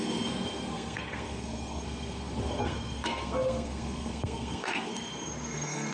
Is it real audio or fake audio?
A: fake